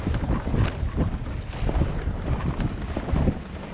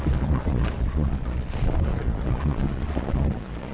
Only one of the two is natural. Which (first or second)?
first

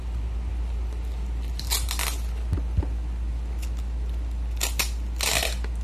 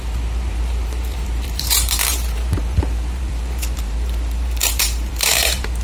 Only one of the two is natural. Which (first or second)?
first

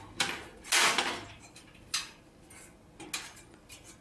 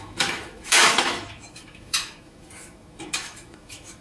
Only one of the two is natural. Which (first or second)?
first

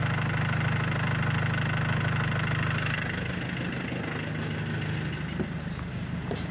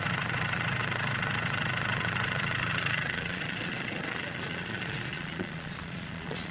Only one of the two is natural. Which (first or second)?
first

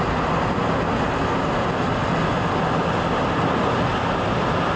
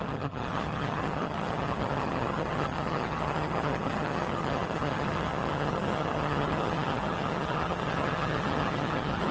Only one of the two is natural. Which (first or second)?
first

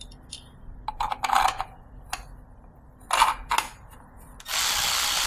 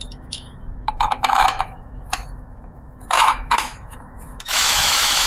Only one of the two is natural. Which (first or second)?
first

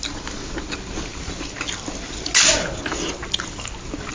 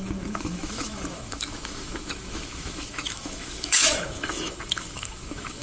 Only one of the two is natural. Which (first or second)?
first